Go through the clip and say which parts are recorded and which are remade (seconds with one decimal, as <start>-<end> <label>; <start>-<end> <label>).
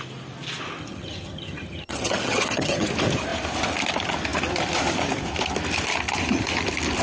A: 0.0-0.8 recorded; 0.8-2.9 remade; 2.9-7.0 recorded